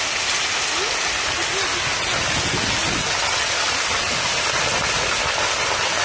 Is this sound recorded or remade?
recorded